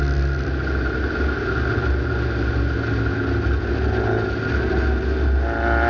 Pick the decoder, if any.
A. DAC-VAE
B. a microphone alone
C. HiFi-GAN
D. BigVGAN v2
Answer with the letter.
B